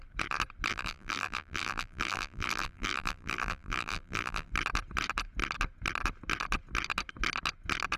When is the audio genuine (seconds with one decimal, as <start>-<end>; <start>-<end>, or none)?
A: 0.0-0.7; 4.5-8.0